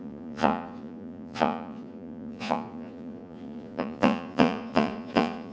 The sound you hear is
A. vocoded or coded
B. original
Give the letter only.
A